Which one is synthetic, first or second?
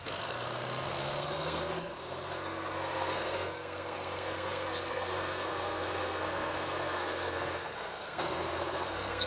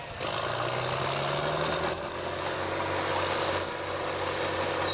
first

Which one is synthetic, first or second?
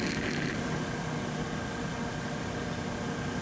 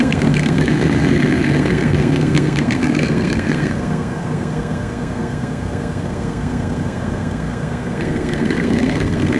second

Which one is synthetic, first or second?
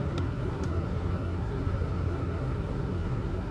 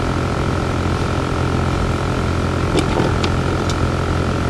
first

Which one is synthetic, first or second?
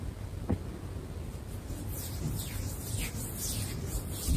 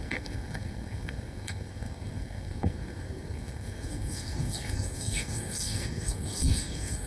second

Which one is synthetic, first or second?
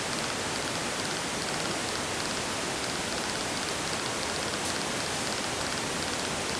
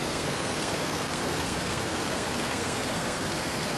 second